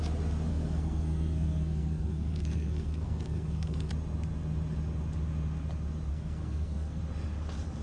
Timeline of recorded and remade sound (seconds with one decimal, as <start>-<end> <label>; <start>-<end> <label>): 0.0-0.5 recorded; 0.5-3.9 remade; 3.9-6.1 recorded; 6.1-7.0 remade; 7.0-7.8 recorded